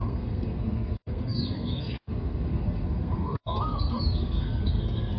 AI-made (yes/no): yes